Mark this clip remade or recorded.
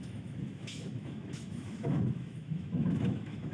remade